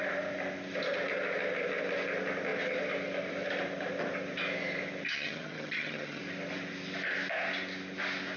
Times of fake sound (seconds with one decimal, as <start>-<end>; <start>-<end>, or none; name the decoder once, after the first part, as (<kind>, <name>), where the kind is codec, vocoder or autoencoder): 5.1-6.2 (vocoder, HiFi-GAN)